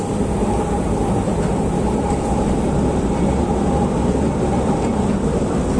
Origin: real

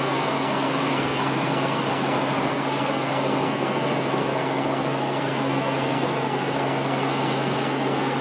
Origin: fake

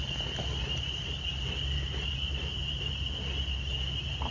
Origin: real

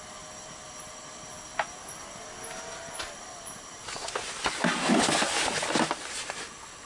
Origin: real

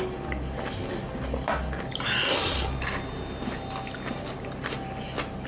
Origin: real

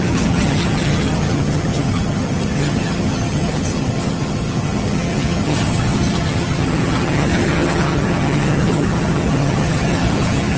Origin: fake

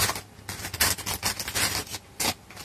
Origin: real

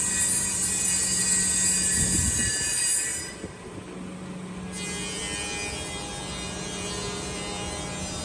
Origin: real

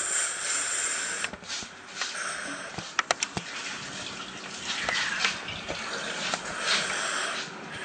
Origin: real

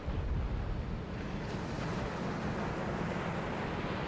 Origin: real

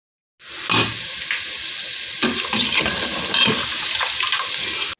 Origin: real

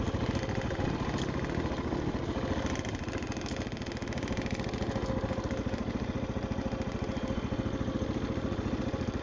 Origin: real